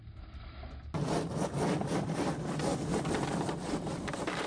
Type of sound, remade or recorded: recorded